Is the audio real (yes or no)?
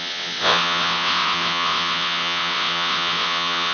no